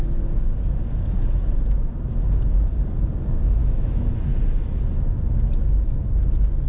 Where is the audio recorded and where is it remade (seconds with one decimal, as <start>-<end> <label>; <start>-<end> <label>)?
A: 0.0-3.6 recorded; 3.6-4.2 remade; 4.2-6.7 recorded